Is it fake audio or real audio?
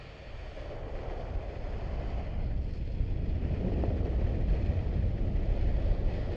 real